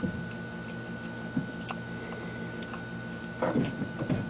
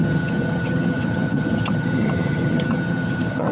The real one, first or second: first